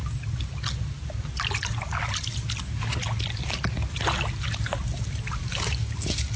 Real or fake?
real